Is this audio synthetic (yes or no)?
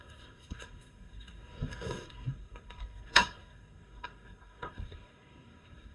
yes